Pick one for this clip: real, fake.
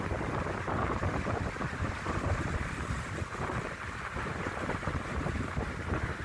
real